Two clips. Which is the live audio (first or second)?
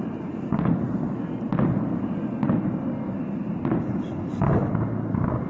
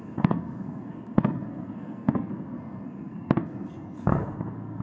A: first